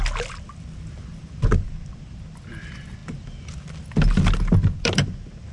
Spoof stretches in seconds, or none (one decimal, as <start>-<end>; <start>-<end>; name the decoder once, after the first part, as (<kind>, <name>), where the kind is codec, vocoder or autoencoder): 1.1-1.8 (vocoder, BigVGAN v2)